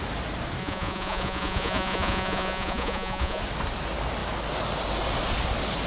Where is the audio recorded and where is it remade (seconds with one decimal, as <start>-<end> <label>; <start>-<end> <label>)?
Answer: 0.0-0.6 recorded; 0.6-3.4 remade; 3.4-5.9 recorded